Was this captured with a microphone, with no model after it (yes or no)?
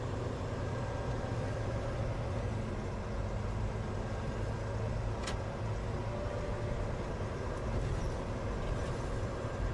yes